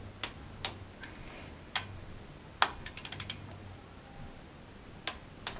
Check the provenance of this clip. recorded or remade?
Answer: recorded